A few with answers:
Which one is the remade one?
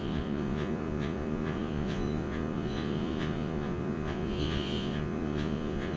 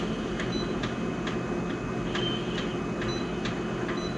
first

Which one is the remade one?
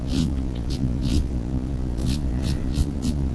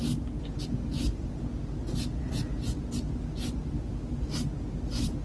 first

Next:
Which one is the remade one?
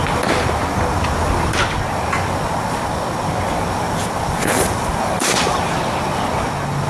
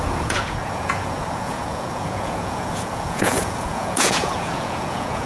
second